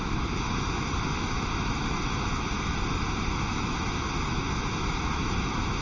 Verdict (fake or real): fake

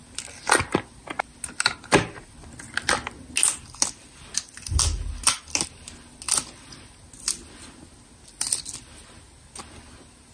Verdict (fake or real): real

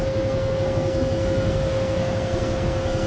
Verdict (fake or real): fake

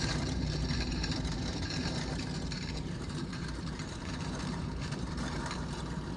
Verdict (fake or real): fake